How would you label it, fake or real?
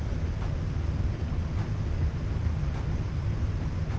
real